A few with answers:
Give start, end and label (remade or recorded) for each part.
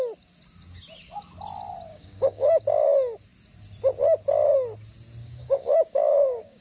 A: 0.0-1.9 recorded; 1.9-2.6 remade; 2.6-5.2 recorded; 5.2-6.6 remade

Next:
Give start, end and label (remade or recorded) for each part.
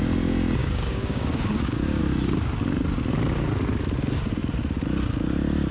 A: 0.0-0.6 recorded; 0.6-2.0 remade; 2.0-5.7 recorded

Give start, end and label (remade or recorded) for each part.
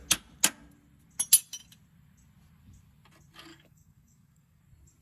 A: 0.0-3.5 recorded; 3.5-4.6 remade; 4.6-5.0 recorded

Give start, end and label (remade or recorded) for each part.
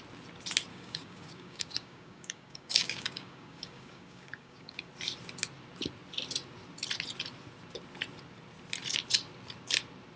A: 0.0-0.7 recorded; 0.7-4.9 remade; 4.9-10.2 recorded